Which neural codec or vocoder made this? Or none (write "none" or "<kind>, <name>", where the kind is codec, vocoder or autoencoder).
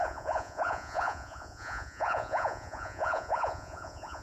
vocoder, Vocos